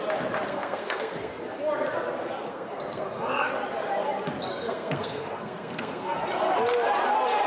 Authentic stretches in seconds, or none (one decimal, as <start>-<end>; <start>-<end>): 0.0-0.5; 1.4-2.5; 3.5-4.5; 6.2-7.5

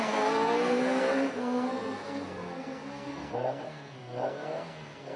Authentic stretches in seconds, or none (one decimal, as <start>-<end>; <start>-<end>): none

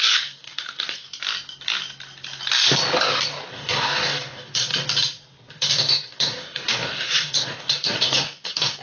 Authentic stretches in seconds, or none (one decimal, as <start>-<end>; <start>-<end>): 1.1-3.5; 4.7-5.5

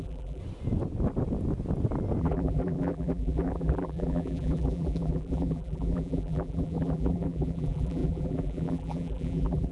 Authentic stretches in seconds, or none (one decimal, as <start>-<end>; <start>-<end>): 0.4-2.2

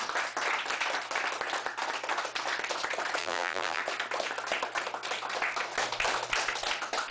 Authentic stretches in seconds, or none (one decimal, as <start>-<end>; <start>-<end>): 0.0-3.2; 3.8-7.1

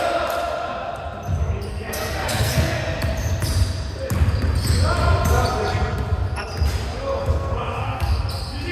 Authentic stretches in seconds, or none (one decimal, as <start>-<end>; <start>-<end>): 0.0-1.7; 2.8-7.2; 8.2-8.7